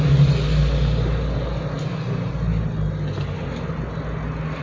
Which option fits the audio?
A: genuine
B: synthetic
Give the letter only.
A